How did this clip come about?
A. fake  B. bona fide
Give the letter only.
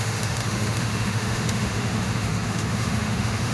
A